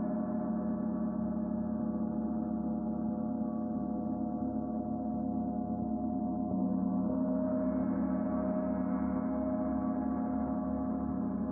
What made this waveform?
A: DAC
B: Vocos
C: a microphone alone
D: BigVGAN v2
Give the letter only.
C